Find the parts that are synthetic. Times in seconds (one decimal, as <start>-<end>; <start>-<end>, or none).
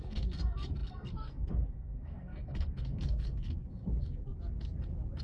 0.0-4.3